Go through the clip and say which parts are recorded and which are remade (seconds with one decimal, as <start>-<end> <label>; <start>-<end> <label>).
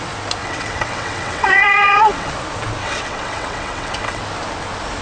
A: 0.0-0.4 recorded; 0.4-2.3 remade; 2.3-2.8 recorded; 2.8-4.2 remade; 4.2-5.0 recorded